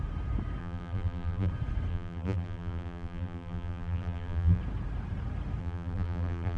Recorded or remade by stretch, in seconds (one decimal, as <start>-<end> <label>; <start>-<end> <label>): 0.0-0.6 recorded; 0.6-1.5 remade; 1.5-1.9 recorded; 1.9-4.6 remade; 4.6-5.6 recorded; 5.6-6.6 remade